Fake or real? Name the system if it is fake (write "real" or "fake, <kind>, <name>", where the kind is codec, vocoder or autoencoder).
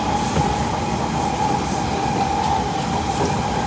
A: real